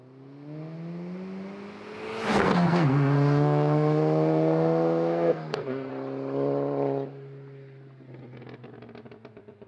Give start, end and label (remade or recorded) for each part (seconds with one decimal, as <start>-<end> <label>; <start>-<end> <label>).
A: 0.0-2.3 recorded; 2.3-5.9 remade; 5.9-9.7 recorded

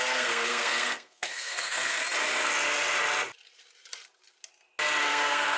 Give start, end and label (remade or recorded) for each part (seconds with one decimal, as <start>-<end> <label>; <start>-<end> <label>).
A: 0.0-2.0 remade; 2.0-5.1 recorded; 5.1-5.6 remade

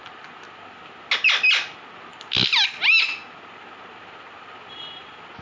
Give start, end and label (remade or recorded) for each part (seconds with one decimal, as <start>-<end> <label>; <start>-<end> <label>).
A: 0.0-5.4 recorded

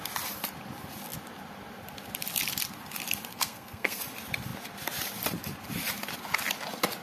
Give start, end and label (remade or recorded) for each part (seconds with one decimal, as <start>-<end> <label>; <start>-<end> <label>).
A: 0.0-3.3 recorded; 3.3-4.0 remade; 4.0-7.0 recorded

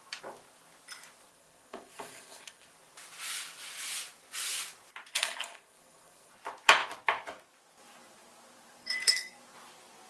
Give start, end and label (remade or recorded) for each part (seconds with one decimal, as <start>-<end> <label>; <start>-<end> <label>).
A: 0.0-1.3 recorded; 1.3-2.7 remade; 2.7-5.1 recorded; 5.1-6.3 remade; 6.3-8.8 recorded; 8.8-9.4 remade; 9.4-10.1 recorded

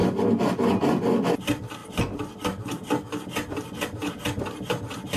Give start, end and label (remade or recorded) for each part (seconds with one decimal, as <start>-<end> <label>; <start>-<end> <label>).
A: 0.0-5.2 recorded

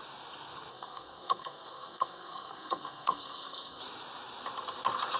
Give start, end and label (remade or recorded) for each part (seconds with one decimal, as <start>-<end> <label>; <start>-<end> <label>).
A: 0.0-0.7 recorded; 0.7-3.8 remade; 3.8-5.2 recorded

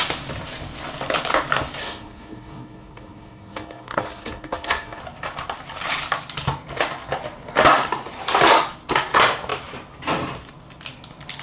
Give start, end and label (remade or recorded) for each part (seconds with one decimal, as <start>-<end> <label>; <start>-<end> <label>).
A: 0.0-1.8 recorded; 1.8-5.0 remade; 5.0-11.4 recorded